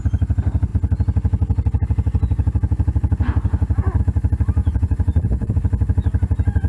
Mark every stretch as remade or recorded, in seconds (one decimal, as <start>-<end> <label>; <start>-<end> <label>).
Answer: 0.0-4.6 recorded; 4.6-5.5 remade; 5.5-6.7 recorded